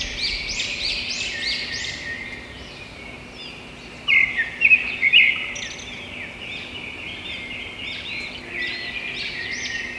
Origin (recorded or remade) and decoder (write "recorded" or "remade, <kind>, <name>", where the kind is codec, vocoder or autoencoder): recorded